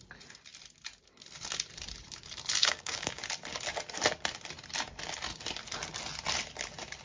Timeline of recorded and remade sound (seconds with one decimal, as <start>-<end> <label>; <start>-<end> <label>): 0.0-2.6 recorded; 2.6-3.2 remade; 3.2-7.0 recorded